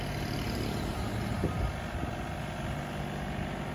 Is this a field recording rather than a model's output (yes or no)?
yes